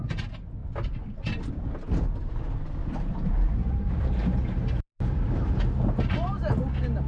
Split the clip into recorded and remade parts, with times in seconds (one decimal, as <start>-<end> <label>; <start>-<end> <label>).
0.0-2.8 recorded; 2.8-5.5 remade; 5.5-7.1 recorded